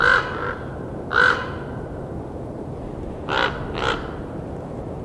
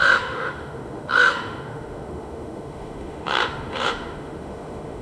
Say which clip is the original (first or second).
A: first